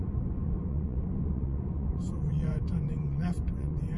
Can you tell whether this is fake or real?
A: fake